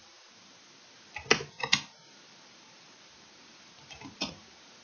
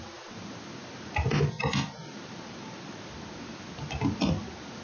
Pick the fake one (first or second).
first